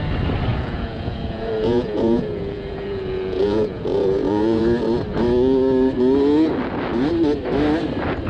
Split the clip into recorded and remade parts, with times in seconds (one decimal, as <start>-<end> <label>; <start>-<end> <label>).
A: 0.0-0.5 recorded; 0.5-4.6 remade; 4.6-8.3 recorded